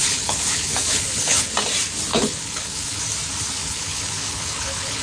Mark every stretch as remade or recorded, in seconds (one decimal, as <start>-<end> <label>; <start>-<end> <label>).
0.0-1.5 remade; 1.5-2.1 recorded; 2.1-3.0 remade; 3.0-3.6 recorded; 3.6-5.0 remade